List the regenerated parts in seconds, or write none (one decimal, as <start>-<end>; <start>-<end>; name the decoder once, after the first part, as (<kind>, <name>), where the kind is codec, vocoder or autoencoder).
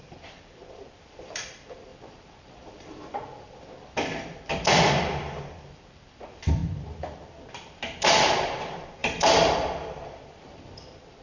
0.0-6.6 (vocoder, BigVGAN v2); 7.5-11.2